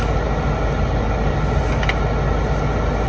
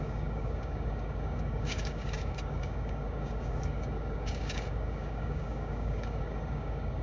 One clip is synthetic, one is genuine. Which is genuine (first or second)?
first